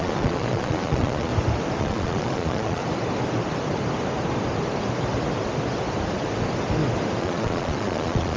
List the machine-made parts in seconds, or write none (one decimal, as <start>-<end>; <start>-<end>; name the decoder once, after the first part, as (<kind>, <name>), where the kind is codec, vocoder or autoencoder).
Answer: 0.0-1.3 (vocoder, Vocos); 1.8-2.8; 7.2-8.4